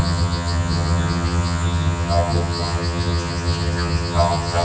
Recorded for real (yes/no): no